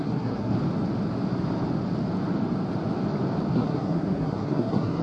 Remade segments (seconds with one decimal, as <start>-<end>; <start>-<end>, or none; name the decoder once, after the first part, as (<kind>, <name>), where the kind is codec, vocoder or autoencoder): 0.0-0.5 (codec, SNAC); 3.5-5.0